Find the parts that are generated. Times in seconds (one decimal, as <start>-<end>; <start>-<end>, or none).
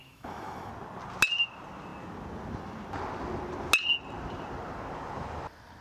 0.0-0.7